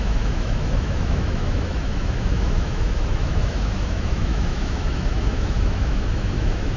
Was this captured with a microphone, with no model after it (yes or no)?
no